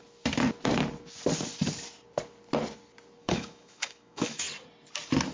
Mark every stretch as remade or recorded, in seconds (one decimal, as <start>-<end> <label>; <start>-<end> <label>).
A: 0.0-3.2 recorded; 3.2-4.4 remade; 4.4-5.3 recorded